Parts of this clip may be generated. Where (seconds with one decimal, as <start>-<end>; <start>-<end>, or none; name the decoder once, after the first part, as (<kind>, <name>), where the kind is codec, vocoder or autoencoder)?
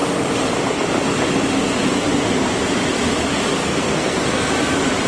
3.6-4.5 (codec, SNAC)